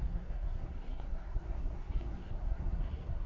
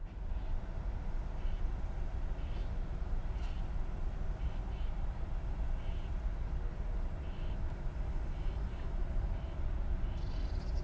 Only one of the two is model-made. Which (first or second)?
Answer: first